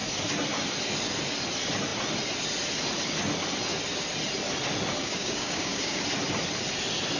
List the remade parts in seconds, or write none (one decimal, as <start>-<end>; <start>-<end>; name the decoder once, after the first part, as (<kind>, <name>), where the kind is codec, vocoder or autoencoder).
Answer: 5.0-6.0 (codec, DAC)